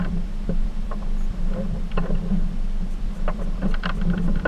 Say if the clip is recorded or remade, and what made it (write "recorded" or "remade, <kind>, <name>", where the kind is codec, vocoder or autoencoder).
remade, vocoder, BigVGAN v2